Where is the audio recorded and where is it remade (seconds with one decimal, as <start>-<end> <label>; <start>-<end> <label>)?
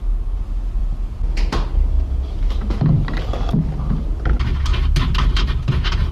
0.0-6.1 recorded